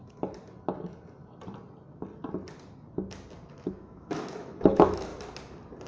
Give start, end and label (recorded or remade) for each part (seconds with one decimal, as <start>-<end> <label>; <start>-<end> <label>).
0.0-3.5 recorded; 3.5-5.1 remade; 5.1-5.9 recorded